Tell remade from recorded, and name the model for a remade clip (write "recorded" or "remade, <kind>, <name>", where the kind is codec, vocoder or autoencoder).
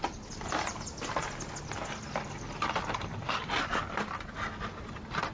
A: recorded